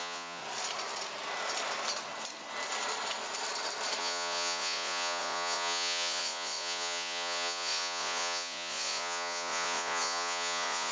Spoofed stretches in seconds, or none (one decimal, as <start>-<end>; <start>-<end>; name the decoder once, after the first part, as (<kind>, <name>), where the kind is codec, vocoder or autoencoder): 0.0-0.4 (vocoder, Vocos); 4.0-10.9